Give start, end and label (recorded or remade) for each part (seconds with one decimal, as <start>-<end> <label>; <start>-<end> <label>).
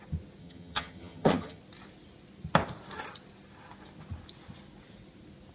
0.0-0.4 recorded; 0.4-1.6 remade; 1.6-5.5 recorded